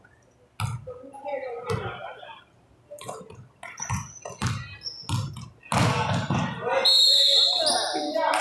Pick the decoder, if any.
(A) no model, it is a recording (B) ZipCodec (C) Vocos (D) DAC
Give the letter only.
A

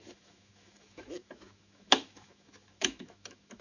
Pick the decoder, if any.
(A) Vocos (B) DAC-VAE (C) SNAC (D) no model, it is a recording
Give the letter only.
B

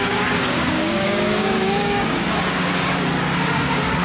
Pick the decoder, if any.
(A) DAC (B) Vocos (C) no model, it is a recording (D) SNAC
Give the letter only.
A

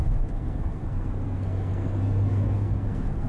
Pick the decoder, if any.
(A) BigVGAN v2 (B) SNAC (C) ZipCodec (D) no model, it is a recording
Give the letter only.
B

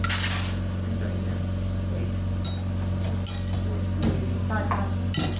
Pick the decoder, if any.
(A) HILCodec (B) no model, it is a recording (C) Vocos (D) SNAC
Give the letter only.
B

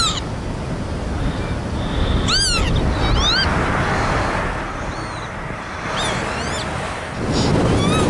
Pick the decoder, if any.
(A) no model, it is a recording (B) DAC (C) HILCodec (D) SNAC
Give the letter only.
A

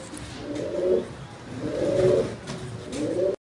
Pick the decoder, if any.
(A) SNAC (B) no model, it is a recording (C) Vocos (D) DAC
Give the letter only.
B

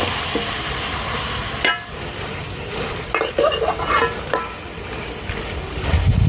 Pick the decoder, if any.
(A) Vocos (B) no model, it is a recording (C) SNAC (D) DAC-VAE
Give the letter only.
B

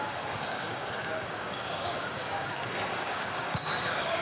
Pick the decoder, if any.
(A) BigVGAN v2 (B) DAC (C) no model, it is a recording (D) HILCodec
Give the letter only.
B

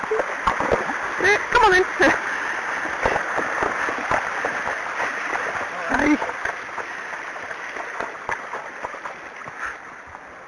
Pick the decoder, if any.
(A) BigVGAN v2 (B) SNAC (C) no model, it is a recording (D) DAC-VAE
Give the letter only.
C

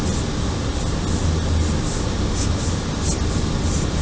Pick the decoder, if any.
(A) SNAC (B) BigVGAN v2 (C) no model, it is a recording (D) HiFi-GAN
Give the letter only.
C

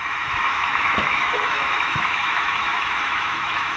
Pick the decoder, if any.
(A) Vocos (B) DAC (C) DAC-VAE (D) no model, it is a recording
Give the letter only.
C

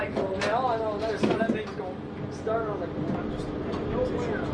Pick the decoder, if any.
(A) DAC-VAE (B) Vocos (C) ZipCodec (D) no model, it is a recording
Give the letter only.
D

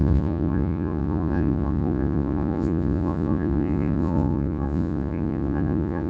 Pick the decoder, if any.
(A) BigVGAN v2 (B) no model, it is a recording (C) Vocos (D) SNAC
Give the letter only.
C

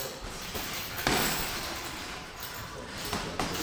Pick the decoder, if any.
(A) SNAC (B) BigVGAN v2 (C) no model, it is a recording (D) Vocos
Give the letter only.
B